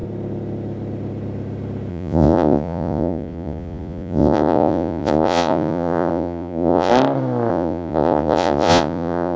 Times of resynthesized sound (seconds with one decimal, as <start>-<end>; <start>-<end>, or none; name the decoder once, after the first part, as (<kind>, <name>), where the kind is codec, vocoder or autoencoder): 1.9-6.9 (vocoder, Vocos); 7.5-9.4